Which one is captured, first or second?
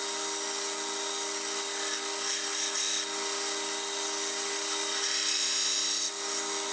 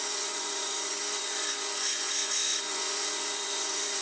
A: first